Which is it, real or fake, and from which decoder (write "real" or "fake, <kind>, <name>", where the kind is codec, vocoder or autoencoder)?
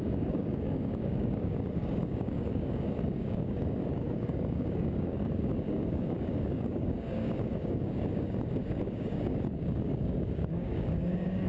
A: fake, codec, DAC